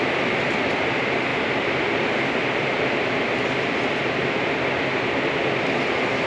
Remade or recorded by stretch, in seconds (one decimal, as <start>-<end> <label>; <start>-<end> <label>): 0.0-6.3 recorded